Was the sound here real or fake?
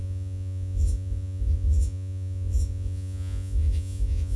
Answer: fake